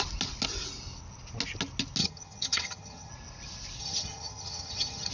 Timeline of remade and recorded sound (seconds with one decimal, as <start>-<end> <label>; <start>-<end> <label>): 0.0-2.0 recorded; 2.0-3.1 remade; 3.1-3.8 recorded; 3.8-5.1 remade